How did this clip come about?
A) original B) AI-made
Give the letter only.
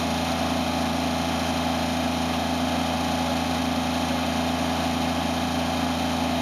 A